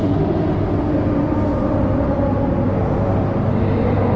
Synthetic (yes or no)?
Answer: no